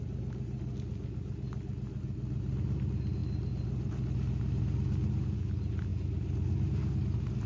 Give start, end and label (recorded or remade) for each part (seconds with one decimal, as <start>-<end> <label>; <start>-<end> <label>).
0.0-7.5 recorded